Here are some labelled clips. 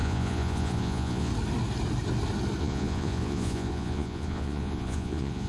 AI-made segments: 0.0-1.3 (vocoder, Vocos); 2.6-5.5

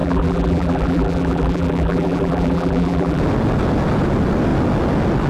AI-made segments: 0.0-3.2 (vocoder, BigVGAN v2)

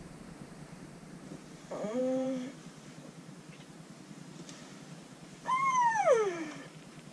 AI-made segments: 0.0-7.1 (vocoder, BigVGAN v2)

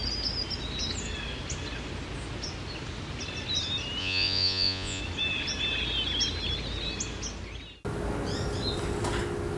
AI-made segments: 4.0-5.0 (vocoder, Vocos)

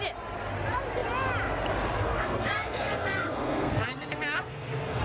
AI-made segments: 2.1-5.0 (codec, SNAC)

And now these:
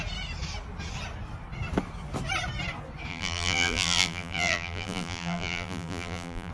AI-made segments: 3.1-6.5 (vocoder, BigVGAN v2)